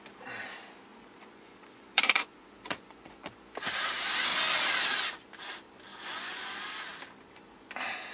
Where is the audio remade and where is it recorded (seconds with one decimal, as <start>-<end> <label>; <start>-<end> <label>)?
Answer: 0.0-0.9 recorded; 0.9-3.4 remade; 3.4-5.9 recorded; 5.9-6.5 remade; 6.5-8.1 recorded